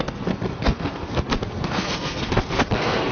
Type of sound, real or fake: fake